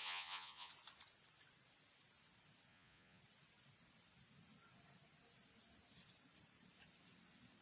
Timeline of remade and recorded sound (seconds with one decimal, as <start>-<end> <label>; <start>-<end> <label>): 0.0-0.7 remade; 0.7-2.7 recorded; 2.7-3.2 remade; 3.2-7.6 recorded